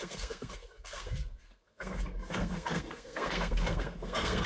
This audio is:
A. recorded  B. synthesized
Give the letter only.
B